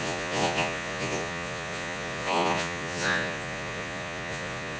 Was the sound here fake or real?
fake